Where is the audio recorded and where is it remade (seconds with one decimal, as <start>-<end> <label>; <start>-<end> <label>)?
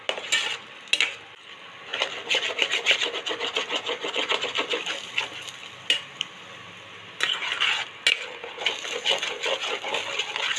0.0-10.6 recorded